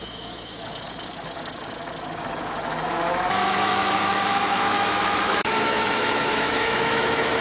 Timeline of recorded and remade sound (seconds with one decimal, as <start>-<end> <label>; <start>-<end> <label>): 0.0-7.4 remade